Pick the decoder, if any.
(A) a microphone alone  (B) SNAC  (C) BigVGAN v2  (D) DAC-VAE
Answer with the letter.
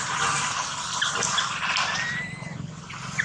A